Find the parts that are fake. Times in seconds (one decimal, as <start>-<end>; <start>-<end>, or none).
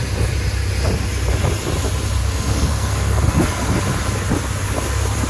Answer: 2.2-3.8